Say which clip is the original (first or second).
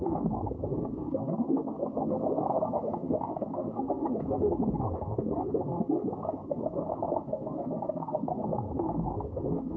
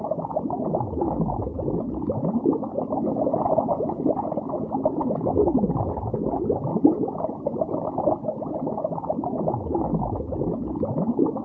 second